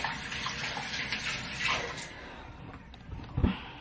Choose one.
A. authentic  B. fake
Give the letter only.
B